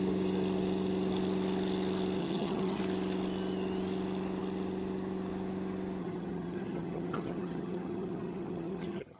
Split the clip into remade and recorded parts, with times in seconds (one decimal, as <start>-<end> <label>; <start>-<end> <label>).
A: 0.0-2.2 recorded; 2.2-2.8 remade; 2.8-6.0 recorded; 6.0-9.2 remade